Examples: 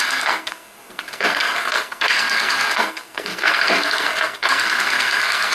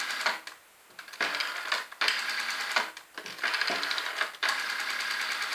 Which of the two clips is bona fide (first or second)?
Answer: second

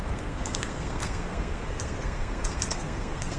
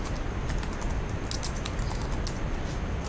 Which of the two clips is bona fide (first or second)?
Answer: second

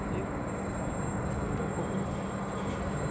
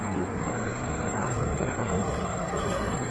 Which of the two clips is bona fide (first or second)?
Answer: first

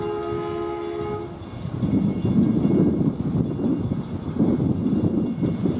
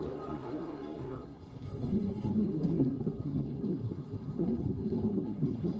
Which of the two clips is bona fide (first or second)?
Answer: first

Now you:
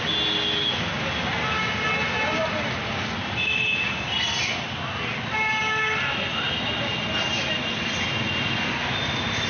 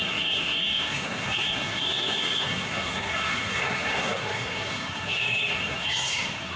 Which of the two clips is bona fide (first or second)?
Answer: first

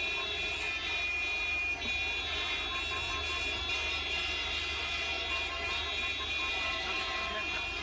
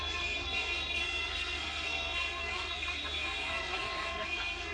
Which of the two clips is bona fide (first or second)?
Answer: first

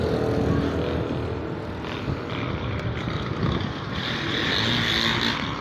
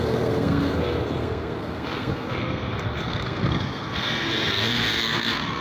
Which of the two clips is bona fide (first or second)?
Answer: first